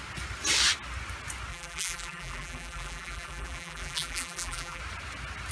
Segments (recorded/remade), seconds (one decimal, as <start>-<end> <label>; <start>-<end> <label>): 0.0-1.5 recorded; 1.5-4.8 remade; 4.8-5.5 recorded